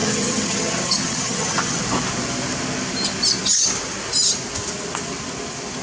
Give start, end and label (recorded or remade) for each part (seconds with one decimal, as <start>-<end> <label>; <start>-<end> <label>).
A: 0.0-1.8 remade; 1.8-5.8 recorded